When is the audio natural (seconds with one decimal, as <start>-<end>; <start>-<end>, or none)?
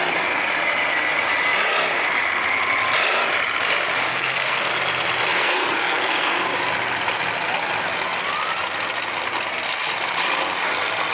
0.0-4.1; 4.7-5.3; 6.5-11.1